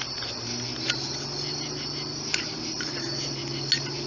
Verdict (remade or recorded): recorded